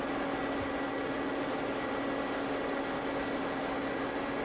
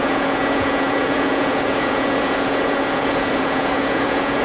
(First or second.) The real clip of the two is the first